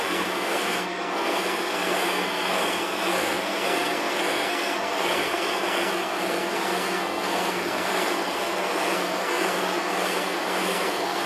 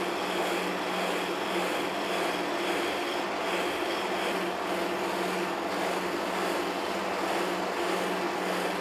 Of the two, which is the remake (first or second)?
first